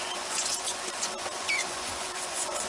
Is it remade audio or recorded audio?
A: remade